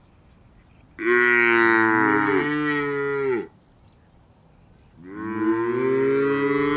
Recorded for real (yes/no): yes